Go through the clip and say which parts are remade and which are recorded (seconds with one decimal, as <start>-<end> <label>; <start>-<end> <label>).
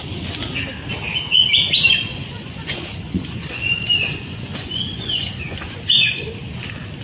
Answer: 0.0-2.1 recorded; 2.1-6.3 remade; 6.3-7.0 recorded